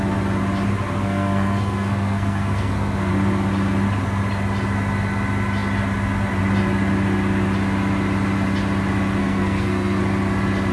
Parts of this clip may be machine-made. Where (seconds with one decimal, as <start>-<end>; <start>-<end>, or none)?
1.0-3.1; 9.2-10.0